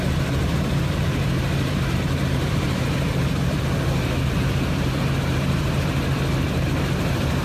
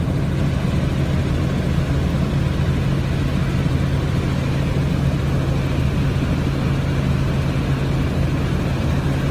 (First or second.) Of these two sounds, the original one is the second